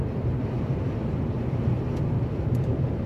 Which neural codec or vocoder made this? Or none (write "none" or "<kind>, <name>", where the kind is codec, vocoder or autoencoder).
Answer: none